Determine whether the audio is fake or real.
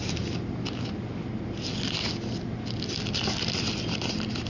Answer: real